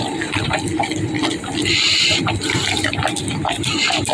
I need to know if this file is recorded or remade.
recorded